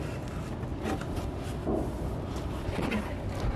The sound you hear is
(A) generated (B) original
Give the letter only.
B